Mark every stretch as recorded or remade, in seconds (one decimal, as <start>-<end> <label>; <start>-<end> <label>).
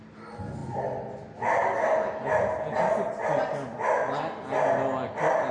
0.0-5.5 recorded